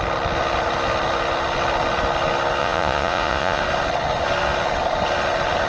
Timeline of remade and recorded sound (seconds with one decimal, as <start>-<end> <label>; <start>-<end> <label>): 0.0-2.6 recorded; 2.6-3.6 remade; 3.6-5.7 recorded